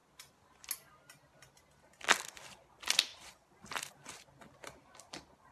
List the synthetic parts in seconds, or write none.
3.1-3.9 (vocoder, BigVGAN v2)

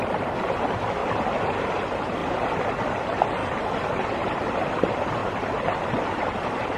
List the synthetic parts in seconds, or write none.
0.0-1.0 (vocoder, BigVGAN v2); 1.6-2.2; 2.7-5.2; 5.9-6.8

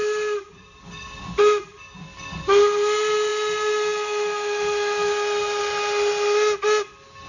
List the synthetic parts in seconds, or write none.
0.0-0.8 (vocoder, BigVGAN v2)

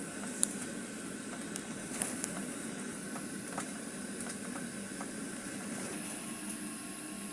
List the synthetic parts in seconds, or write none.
0.0-7.3 (vocoder, BigVGAN v2)

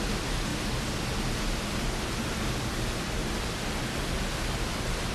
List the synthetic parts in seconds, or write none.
3.2-3.8 (vocoder, BigVGAN v2)